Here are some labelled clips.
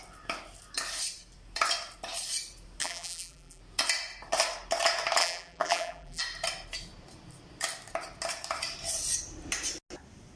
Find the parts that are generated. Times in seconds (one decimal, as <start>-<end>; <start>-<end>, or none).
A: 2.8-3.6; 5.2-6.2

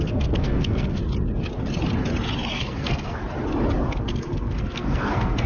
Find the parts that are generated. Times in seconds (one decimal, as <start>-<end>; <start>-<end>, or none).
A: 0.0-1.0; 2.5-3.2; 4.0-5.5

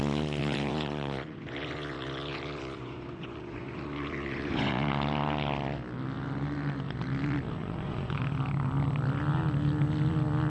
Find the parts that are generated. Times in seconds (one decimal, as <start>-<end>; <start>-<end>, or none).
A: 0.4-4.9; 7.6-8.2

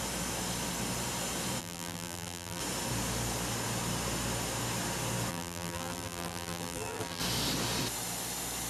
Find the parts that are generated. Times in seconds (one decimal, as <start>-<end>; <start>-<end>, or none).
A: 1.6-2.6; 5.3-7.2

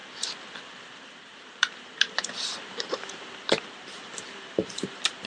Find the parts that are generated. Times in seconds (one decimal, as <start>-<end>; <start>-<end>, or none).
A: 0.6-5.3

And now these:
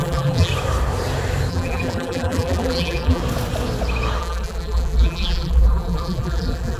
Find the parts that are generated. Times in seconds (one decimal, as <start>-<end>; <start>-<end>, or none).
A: 0.0-0.5; 1.5-3.2; 4.2-6.8

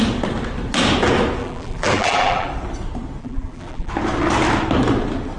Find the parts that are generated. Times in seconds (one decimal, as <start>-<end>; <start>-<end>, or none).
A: 1.4-2.5; 3.2-3.9